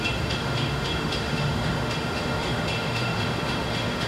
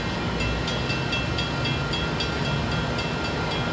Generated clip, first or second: first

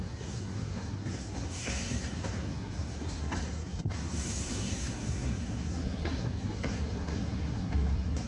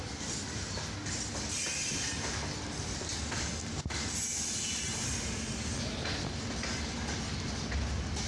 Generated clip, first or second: first